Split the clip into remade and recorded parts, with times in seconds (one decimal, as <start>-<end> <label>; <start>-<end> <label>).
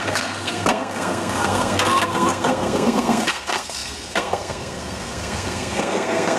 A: 0.0-6.4 remade